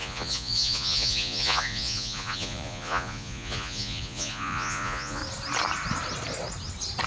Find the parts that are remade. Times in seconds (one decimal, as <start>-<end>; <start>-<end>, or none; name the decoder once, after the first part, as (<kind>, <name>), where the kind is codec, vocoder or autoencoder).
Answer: 0.0-5.2 (vocoder, Vocos)